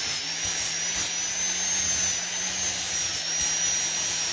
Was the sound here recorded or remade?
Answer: recorded